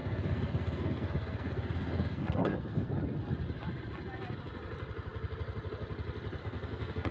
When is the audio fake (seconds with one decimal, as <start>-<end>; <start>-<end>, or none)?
0.0-2.9; 6.4-7.1